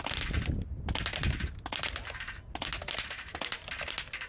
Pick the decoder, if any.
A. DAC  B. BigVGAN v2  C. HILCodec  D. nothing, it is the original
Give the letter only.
D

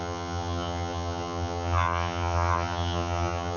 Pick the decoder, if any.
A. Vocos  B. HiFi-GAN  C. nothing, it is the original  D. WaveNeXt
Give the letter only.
B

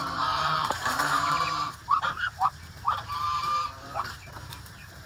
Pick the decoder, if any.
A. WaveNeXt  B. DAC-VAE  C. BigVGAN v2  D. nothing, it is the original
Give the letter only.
C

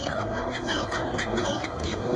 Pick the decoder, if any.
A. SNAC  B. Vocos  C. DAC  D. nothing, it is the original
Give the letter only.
A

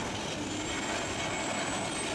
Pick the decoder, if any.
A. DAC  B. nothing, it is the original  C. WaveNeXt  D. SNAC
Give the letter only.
B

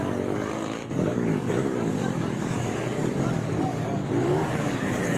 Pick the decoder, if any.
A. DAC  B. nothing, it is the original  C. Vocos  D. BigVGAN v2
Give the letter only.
A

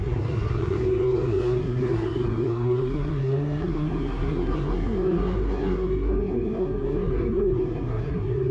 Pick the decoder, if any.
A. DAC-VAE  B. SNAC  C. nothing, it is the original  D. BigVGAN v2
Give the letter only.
B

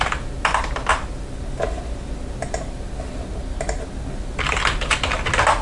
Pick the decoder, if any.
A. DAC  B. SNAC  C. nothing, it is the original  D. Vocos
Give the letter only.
C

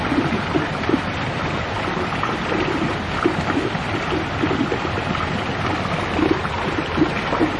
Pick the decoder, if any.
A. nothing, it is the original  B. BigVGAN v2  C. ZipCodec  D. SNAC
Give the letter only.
A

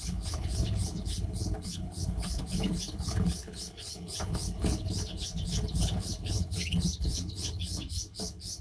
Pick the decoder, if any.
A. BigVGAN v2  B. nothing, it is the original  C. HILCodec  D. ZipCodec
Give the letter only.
C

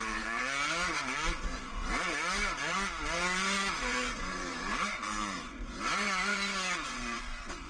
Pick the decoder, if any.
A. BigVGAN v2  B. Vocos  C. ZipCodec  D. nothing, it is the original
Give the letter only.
B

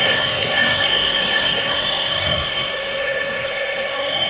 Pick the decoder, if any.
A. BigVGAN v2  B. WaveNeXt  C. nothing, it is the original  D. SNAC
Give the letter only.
D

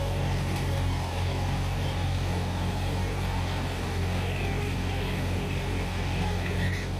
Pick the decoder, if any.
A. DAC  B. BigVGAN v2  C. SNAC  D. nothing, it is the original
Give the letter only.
A